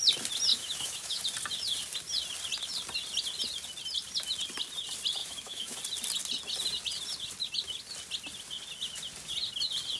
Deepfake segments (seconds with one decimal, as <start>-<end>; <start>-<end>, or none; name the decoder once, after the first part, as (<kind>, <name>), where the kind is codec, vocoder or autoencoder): 0.5-1.2 (autoencoder, DAC-VAE); 5.2-5.8